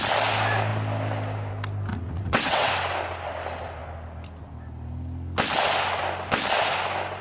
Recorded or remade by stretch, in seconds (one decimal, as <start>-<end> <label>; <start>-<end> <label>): 0.0-1.9 recorded; 1.9-2.7 remade; 2.7-7.2 recorded